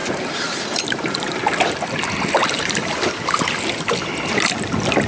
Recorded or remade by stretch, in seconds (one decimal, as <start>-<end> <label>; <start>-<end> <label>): 0.0-1.5 remade; 1.5-2.4 recorded; 2.4-3.9 remade; 3.9-5.1 recorded